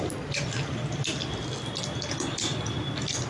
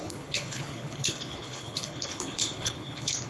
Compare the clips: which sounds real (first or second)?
first